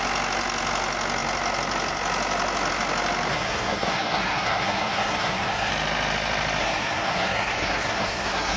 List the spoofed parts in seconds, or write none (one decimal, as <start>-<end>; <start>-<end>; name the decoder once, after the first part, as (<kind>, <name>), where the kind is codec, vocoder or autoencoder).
3.3-5.7 (codec, SNAC); 6.6-8.6